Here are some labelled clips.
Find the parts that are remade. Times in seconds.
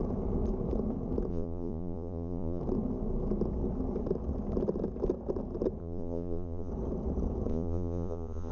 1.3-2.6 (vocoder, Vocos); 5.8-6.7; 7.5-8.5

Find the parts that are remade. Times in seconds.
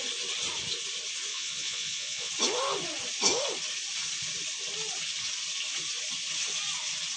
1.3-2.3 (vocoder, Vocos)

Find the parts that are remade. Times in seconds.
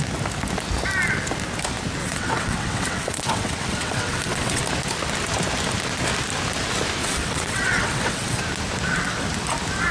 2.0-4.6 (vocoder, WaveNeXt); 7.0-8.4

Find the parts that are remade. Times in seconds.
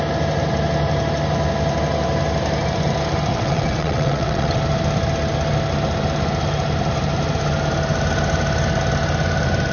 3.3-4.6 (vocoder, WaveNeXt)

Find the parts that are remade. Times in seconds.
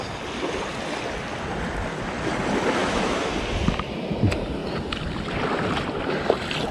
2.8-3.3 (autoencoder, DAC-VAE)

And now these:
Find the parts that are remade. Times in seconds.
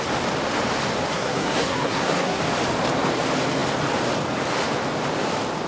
1.1-2.4 (codec, SNAC)